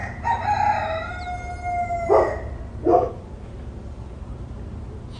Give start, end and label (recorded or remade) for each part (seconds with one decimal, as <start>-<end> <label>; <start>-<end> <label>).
0.0-5.2 recorded

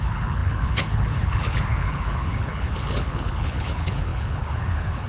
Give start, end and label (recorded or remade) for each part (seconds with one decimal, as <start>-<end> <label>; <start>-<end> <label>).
0.0-5.1 remade

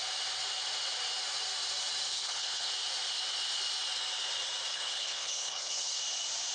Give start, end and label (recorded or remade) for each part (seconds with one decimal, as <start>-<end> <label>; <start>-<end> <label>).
0.0-2.1 recorded; 2.1-2.7 remade; 2.7-4.7 recorded; 4.7-6.0 remade; 6.0-6.5 recorded

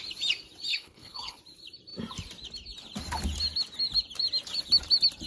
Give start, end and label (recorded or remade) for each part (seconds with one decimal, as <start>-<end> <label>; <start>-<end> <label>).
0.0-0.7 recorded; 0.7-1.4 remade; 1.4-5.3 recorded

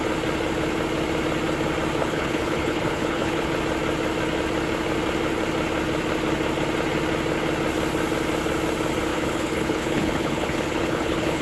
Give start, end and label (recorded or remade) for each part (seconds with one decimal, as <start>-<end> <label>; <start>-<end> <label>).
0.0-2.0 recorded; 2.0-3.5 remade; 3.5-9.1 recorded; 9.1-11.4 remade

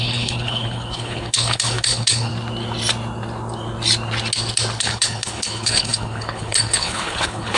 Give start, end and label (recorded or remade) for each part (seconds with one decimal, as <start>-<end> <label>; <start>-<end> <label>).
0.0-2.3 remade; 2.3-4.8 recorded; 4.8-7.6 remade

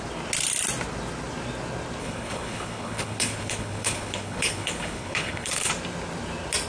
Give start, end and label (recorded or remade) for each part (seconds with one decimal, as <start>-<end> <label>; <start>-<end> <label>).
0.0-2.0 recorded; 2.0-5.7 remade; 5.7-6.7 recorded